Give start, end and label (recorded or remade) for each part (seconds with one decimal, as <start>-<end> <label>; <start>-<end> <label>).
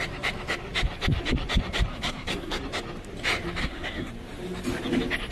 0.0-1.9 recorded; 1.9-2.6 remade; 2.6-3.6 recorded; 3.6-4.1 remade; 4.1-5.3 recorded